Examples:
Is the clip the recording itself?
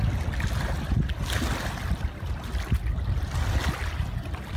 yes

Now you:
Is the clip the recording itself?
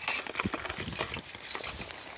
yes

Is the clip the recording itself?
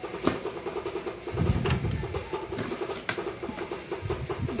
yes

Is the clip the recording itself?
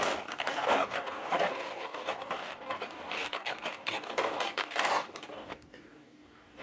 no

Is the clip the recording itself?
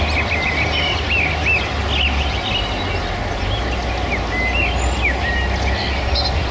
yes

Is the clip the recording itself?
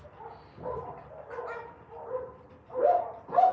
yes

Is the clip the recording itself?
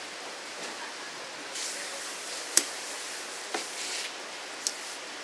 yes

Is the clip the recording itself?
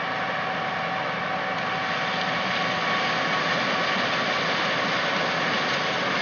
yes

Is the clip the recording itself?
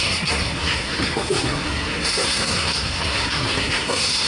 no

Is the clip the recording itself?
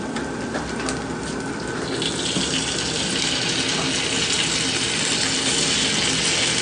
yes